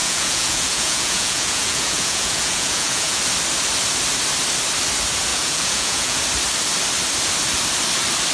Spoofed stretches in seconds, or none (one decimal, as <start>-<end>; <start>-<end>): 0.0-3.2; 5.3-6.2